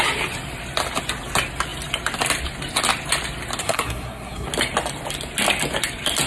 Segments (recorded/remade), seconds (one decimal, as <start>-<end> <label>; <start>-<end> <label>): 0.0-3.6 recorded; 3.6-4.5 remade; 4.5-6.3 recorded

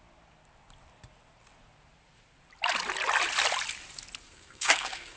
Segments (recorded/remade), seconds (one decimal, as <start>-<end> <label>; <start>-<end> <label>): 0.0-4.2 recorded; 4.2-5.2 remade

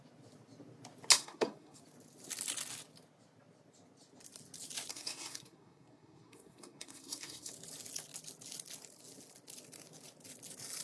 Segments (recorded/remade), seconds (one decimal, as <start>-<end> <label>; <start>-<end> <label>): 0.0-1.2 recorded; 1.2-1.8 remade; 1.8-4.9 recorded; 4.9-7.5 remade; 7.5-10.8 recorded

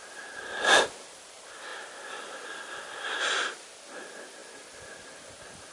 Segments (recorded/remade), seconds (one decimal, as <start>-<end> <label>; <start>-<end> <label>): 0.0-5.7 recorded

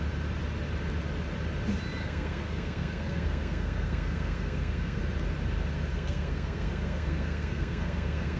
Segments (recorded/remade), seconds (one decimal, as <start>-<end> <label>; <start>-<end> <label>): 0.0-2.0 recorded; 2.0-5.0 remade; 5.0-5.9 recorded; 5.9-8.4 remade

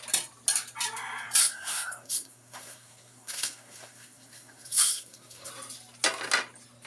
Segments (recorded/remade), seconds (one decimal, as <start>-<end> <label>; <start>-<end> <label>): 0.0-1.4 recorded; 1.4-5.5 remade; 5.5-6.9 recorded

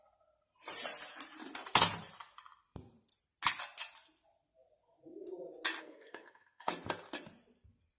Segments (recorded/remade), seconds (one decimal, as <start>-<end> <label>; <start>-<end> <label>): 0.0-5.8 recorded; 5.8-6.7 remade; 6.7-8.0 recorded